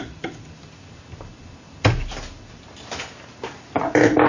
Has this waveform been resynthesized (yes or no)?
no